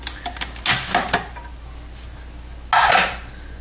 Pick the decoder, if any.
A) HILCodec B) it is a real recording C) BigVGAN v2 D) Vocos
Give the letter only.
B